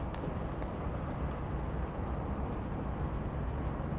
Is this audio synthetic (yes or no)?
no